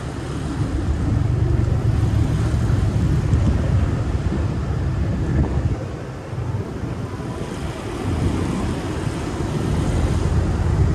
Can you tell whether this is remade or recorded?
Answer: recorded